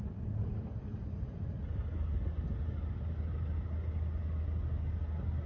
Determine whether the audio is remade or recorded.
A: recorded